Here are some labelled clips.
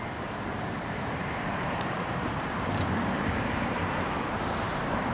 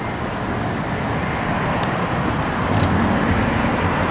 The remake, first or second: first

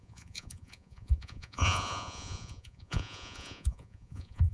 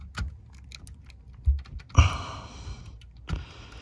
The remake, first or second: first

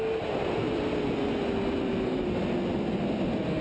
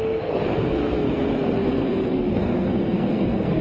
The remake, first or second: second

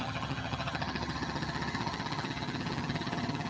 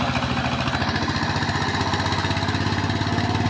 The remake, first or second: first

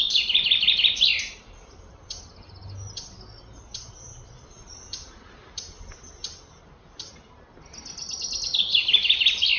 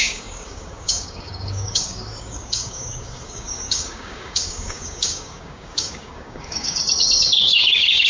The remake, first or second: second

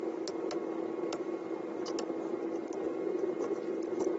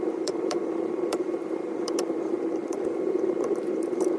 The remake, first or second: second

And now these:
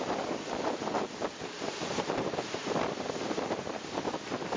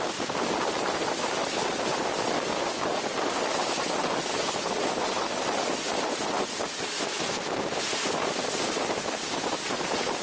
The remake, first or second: first